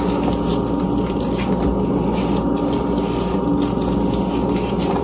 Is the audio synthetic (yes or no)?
no